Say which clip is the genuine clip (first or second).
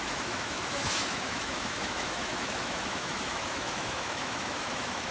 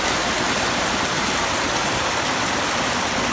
second